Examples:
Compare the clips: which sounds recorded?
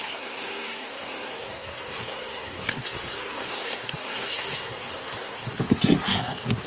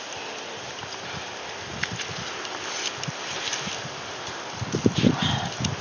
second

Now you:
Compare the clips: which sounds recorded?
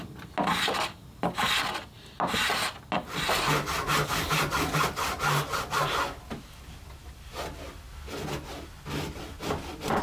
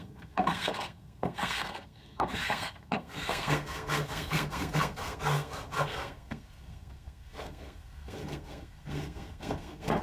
first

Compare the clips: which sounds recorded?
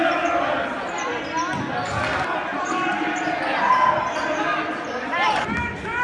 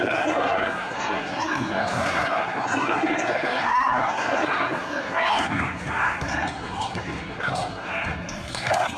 first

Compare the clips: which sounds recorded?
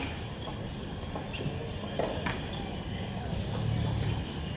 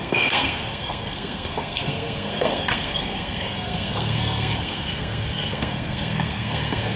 first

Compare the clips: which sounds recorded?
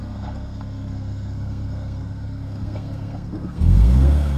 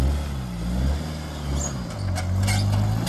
second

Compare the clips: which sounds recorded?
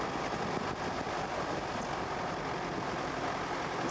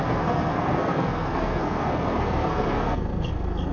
first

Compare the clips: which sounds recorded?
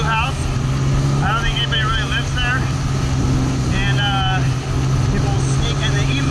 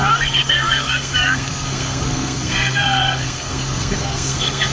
first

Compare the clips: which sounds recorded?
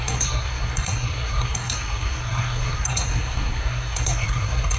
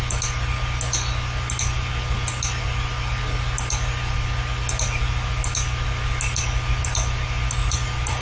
second